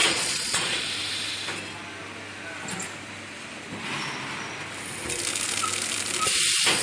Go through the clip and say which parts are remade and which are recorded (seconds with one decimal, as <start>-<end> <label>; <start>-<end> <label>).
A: 0.0-0.9 remade; 0.9-6.8 recorded